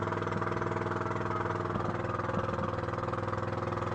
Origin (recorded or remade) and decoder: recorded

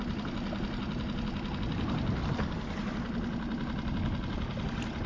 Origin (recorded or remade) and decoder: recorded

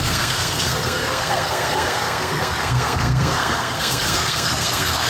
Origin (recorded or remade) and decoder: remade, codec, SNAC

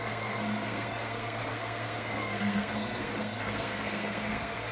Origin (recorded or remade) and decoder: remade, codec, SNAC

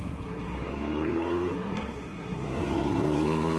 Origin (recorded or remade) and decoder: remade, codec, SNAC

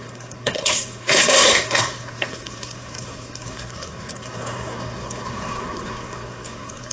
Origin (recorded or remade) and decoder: remade, codec, SNAC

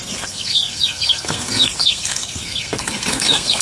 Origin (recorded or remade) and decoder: remade, codec, SNAC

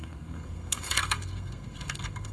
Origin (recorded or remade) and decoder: remade, codec, SNAC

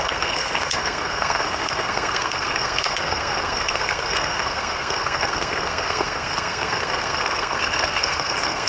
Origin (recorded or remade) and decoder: remade, codec, SNAC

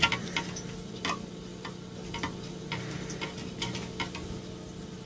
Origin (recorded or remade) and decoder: recorded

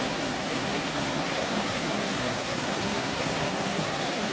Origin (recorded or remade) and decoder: remade, codec, SNAC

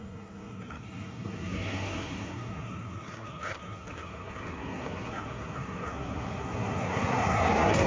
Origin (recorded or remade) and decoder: remade, codec, SNAC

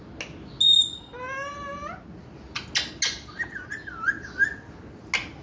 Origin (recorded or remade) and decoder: recorded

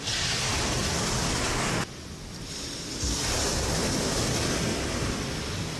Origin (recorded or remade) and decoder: recorded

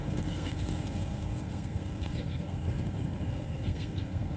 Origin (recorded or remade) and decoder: remade, codec, SNAC